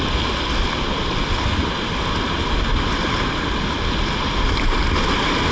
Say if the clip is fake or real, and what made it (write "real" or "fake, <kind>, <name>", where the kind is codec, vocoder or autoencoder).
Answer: real